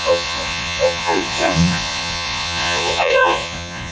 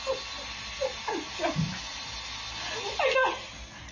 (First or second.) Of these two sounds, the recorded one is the second